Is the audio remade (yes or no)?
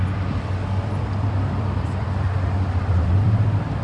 yes